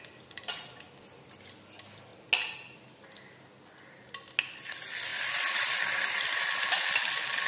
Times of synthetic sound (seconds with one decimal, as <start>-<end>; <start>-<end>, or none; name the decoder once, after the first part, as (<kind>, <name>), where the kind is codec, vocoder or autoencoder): 5.1-6.9 (vocoder, BigVGAN v2)